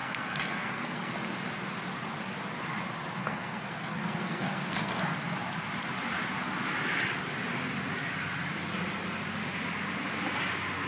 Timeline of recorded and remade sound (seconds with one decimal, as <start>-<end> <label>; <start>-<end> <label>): 0.0-1.1 remade; 1.1-3.2 recorded; 3.2-5.0 remade; 5.0-10.9 recorded